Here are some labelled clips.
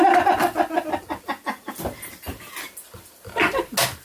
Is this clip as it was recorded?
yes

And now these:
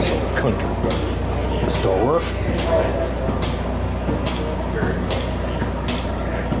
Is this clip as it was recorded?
yes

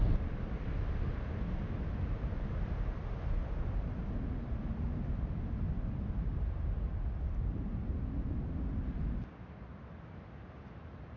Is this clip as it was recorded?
yes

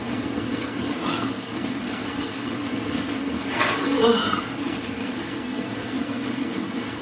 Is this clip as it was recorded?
no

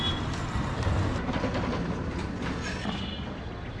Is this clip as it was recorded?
yes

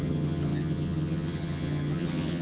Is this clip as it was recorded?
no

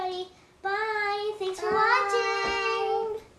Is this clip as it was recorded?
yes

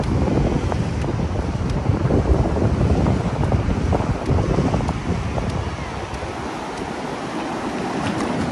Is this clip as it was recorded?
yes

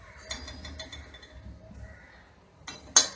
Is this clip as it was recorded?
yes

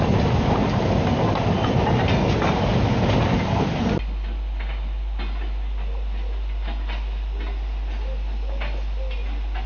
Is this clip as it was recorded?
yes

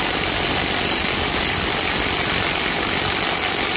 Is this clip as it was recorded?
yes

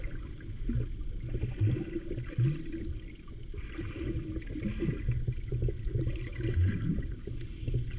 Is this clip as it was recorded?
yes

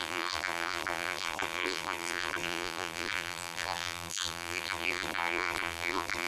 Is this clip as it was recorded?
no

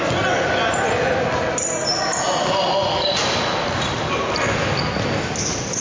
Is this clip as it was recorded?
yes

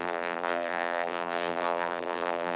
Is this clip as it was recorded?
no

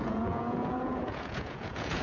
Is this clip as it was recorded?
no